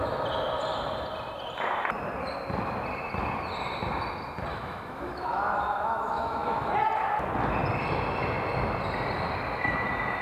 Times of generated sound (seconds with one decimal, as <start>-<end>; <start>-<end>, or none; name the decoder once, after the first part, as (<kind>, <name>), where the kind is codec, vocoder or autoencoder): 4.5-6.7 (autoencoder, DAC-VAE)